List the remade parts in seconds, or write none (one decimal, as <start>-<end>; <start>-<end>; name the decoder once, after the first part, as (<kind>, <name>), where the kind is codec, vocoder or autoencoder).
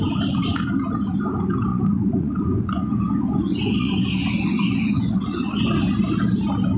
1.7-5.6 (vocoder, Vocos)